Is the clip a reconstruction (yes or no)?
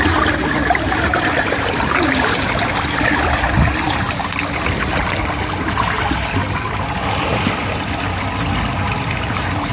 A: no